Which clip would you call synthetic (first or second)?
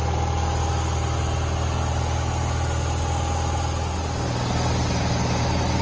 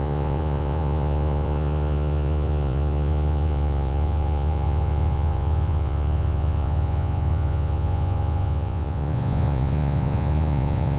second